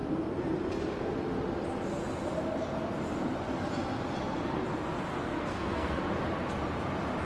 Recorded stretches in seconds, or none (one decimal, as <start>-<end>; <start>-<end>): 0.0-5.1; 6.0-7.2